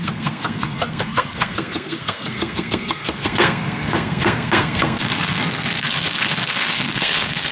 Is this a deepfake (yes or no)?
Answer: yes